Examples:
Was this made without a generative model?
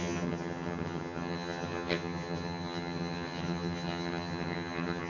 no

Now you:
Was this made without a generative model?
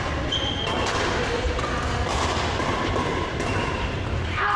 yes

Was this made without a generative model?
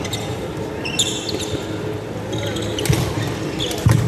yes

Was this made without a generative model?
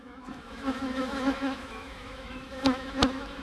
no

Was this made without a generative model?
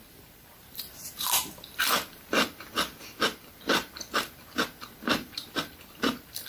no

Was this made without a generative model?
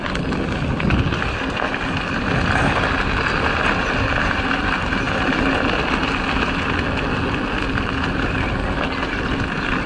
yes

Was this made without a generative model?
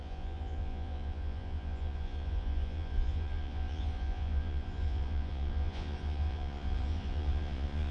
no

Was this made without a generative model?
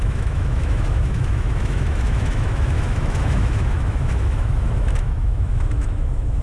no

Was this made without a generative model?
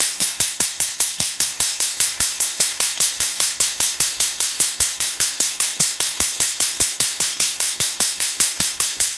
no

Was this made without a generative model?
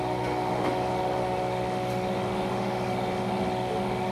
no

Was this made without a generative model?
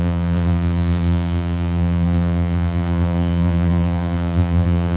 no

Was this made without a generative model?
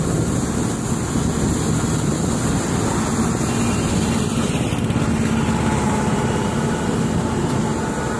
yes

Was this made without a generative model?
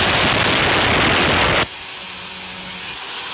yes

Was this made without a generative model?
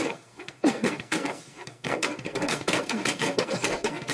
no